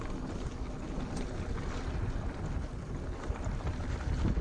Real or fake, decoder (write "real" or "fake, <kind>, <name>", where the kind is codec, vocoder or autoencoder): real